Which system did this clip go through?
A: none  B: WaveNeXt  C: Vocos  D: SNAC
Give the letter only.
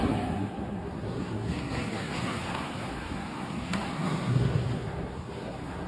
D